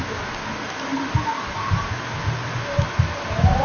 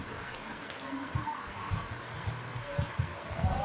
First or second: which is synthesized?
second